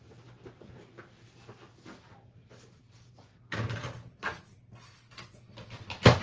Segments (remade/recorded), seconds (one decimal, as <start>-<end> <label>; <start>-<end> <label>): 0.0-6.2 recorded